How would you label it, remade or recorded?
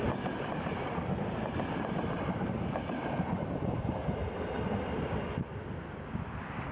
recorded